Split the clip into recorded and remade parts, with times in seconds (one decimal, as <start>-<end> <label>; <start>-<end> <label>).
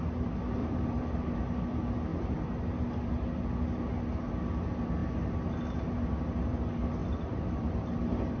0.0-0.6 recorded; 0.6-1.4 remade; 1.4-7.0 recorded; 7.0-8.4 remade